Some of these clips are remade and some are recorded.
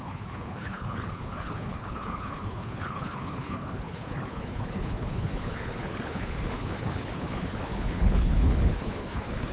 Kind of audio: remade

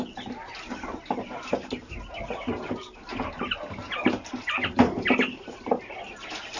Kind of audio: recorded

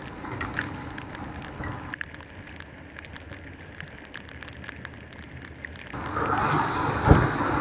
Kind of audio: recorded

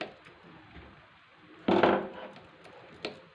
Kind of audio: recorded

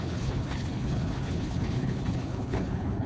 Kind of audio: remade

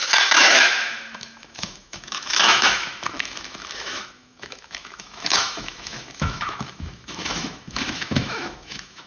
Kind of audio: remade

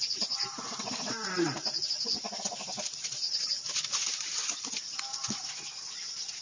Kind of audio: recorded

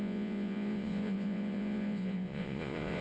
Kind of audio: remade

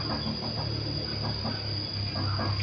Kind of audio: recorded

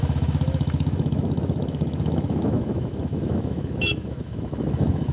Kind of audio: remade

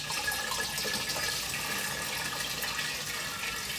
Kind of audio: recorded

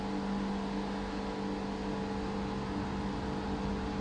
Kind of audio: recorded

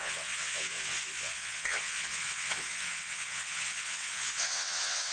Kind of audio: remade